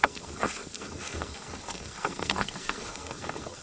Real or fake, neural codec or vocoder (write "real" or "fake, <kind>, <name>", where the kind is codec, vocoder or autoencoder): fake, codec, SNAC